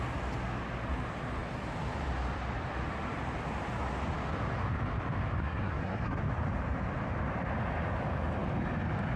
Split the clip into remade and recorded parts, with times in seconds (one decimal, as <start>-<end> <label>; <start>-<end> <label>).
0.0-5.4 recorded; 5.4-6.2 remade; 6.2-9.2 recorded